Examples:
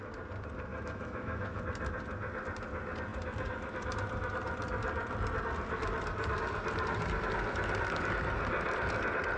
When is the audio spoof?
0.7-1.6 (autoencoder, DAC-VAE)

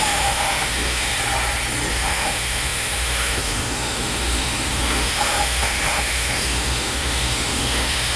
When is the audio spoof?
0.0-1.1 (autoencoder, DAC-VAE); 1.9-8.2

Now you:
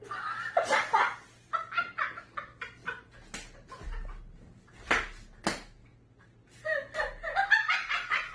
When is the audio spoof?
none